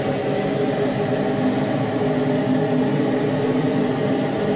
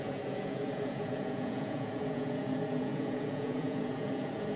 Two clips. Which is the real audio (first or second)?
first